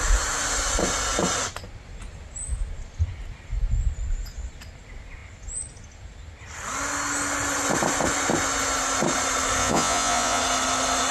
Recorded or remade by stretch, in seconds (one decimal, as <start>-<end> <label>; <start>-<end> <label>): 0.0-9.6 recorded; 9.6-10.4 remade; 10.4-11.1 recorded